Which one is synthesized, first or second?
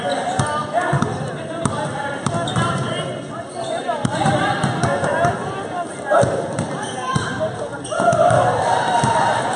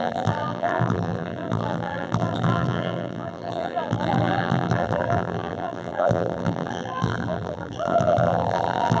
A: second